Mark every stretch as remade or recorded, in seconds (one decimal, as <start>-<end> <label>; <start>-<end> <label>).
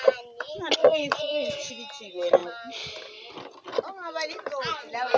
0.0-0.8 recorded; 0.8-1.7 remade; 1.7-5.2 recorded